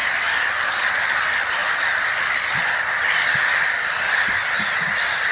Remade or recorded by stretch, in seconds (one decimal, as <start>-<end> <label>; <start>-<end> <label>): 0.0-1.6 recorded; 1.6-4.6 remade; 4.6-5.3 recorded